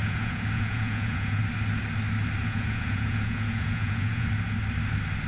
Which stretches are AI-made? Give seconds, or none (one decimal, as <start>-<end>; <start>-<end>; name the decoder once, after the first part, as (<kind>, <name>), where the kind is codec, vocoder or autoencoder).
0.0-1.4 (vocoder, Vocos); 2.4-4.3